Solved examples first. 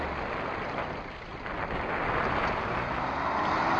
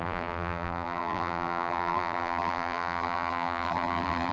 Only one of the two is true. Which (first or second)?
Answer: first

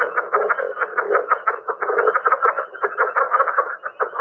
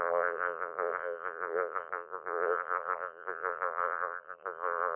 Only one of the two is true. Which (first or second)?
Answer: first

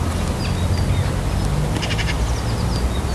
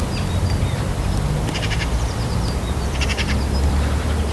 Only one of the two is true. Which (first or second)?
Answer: first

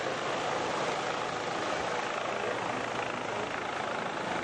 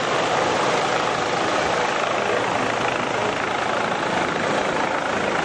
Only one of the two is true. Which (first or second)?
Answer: first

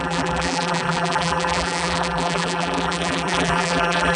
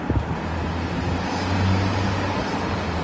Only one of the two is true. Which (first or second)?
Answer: second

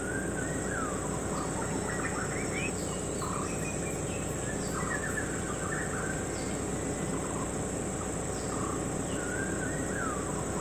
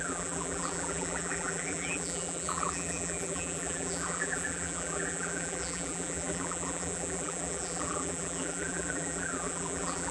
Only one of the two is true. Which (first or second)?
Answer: first